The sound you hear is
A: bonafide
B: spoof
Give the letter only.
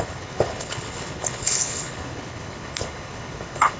B